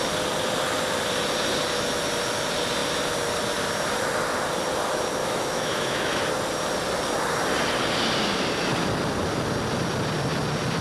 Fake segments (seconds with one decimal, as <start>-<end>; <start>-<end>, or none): 5.2-6.2